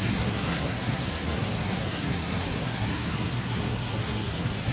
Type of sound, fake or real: fake